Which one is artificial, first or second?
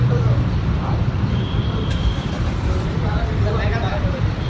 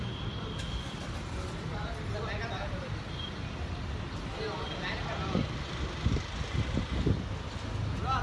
first